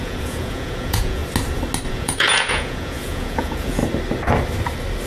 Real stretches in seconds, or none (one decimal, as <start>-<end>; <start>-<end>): 1.2-1.9; 3.8-5.1

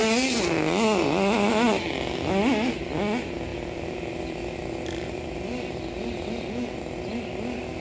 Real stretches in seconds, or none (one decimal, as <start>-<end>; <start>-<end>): 0.0-3.5; 6.4-7.8

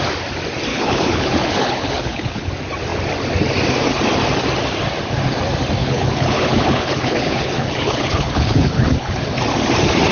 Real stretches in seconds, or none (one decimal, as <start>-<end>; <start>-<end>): 0.0-0.7; 2.5-5.8; 9.2-10.1